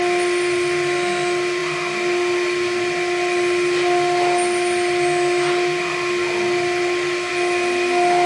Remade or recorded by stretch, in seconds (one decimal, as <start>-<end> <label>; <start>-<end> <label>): 0.0-8.3 recorded